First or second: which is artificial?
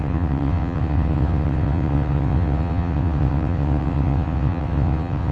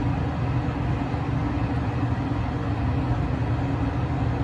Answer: first